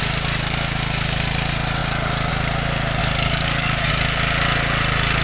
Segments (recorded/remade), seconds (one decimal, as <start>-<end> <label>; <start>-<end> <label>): 0.0-3.0 recorded; 3.0-3.9 remade; 3.9-5.2 recorded